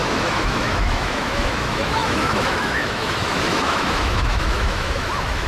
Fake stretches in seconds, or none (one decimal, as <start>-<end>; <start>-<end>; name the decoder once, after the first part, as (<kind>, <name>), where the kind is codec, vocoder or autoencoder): 0.0-5.5 (autoencoder, DAC-VAE)